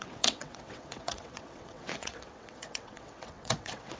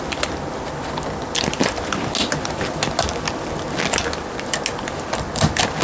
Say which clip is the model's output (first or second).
first